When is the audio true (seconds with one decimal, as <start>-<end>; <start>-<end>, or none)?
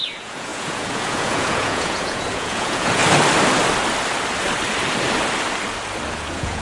3.0-6.1